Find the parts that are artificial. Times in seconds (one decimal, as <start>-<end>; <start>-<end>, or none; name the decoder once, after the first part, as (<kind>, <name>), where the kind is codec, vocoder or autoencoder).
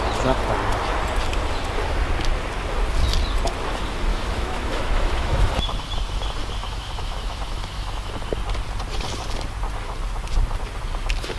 4.1-5.5 (autoencoder, DAC-VAE); 6.6-8.1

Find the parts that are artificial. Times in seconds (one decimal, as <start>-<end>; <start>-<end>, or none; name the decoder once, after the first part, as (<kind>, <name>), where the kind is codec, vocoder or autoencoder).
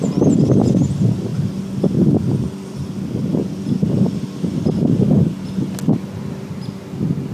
none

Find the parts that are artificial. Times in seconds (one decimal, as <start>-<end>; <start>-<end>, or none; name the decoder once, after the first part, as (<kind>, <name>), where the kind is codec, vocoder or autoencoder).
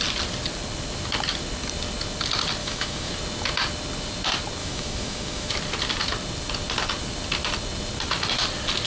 2.6-3.1 (autoencoder, DAC-VAE); 4.6-5.5